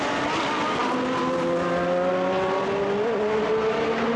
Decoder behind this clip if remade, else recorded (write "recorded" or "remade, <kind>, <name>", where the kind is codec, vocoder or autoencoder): recorded